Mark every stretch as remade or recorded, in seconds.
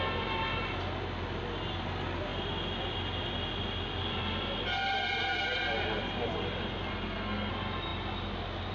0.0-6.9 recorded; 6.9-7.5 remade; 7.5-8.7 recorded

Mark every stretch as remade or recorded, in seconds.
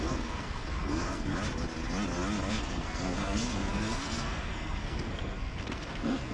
0.0-1.3 remade; 1.3-2.5 recorded; 2.5-6.3 remade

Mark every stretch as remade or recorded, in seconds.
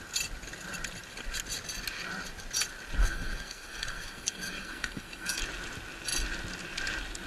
0.0-3.0 recorded; 3.0-5.4 remade; 5.4-7.3 recorded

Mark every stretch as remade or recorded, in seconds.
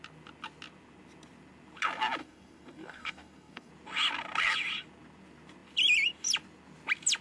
0.0-2.2 recorded; 2.2-3.7 remade; 3.7-7.2 recorded